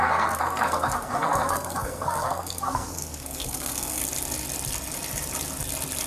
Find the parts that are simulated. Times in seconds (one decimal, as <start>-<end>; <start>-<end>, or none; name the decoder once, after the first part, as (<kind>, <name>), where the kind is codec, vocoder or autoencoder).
0.0-4.0 (codec, SNAC)